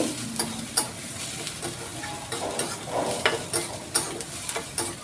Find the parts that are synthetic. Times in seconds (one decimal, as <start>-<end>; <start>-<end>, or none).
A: 0.0-1.9; 3.0-5.0